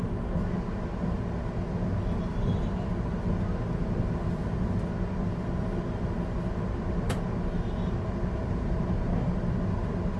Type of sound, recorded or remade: recorded